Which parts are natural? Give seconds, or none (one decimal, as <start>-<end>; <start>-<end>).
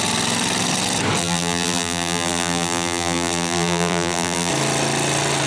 0.0-1.2; 4.5-5.5